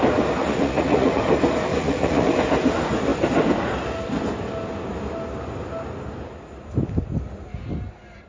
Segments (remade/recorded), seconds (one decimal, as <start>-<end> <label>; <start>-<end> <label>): 0.0-0.4 recorded; 0.4-1.2 remade; 1.2-1.7 recorded; 1.7-2.3 remade; 2.3-8.3 recorded